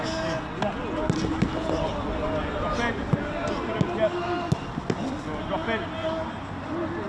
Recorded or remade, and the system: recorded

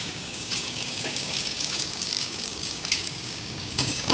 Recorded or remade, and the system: remade, codec, DAC